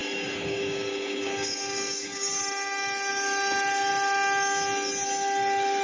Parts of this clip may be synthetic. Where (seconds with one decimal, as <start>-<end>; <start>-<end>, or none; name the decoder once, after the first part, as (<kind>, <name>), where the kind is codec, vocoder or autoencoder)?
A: 0.0-2.4 (codec, DAC)